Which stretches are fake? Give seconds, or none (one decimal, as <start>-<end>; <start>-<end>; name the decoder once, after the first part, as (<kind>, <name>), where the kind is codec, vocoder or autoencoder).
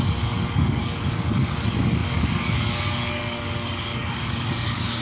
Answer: 0.0-5.0 (codec, DAC)